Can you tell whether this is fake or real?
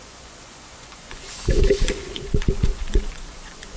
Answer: fake